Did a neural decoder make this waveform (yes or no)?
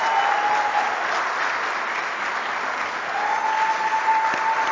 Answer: no